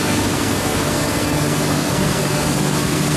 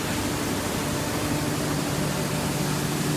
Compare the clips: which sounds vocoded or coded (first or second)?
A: first